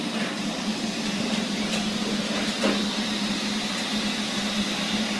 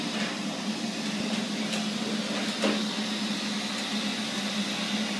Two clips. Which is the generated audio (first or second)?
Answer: first